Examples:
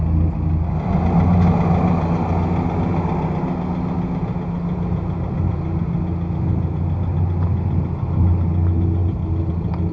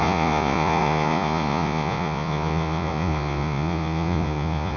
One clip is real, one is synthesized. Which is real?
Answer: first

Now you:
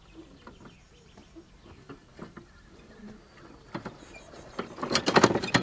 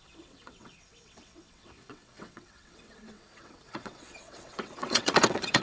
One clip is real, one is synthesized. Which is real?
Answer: first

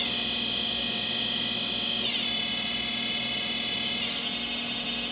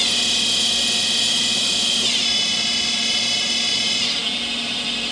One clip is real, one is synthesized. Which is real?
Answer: first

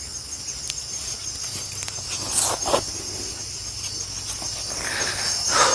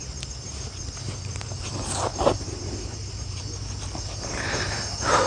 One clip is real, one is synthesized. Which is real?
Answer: first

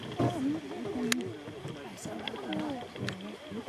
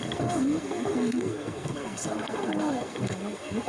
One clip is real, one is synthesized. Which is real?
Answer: first